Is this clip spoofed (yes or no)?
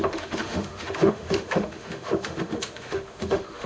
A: yes